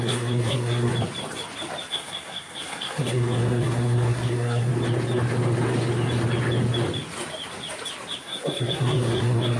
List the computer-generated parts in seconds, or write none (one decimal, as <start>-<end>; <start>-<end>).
0.0-0.9; 1.9-4.7; 8.2-9.6